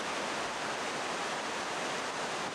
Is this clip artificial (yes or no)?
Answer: no